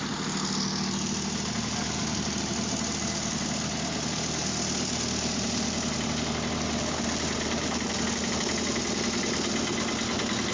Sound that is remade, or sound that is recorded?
recorded